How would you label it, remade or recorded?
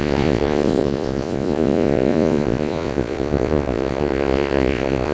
remade